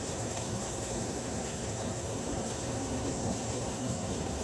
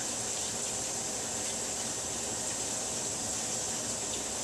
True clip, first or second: second